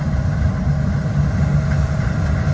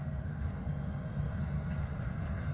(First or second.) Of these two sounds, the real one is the first